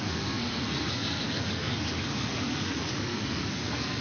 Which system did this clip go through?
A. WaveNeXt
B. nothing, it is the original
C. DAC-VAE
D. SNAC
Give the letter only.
D